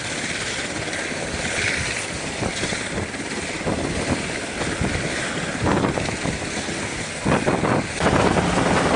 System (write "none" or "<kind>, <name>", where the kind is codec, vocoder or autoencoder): none